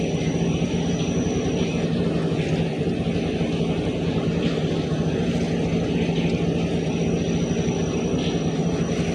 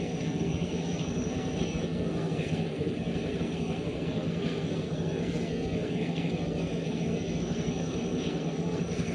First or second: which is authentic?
first